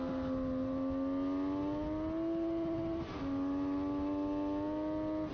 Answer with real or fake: real